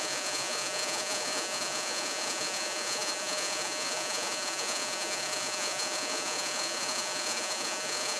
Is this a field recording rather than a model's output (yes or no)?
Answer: no